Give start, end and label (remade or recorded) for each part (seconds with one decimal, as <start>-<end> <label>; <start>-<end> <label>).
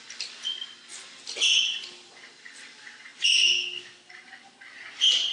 0.0-5.3 recorded